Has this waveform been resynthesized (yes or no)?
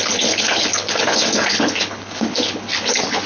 yes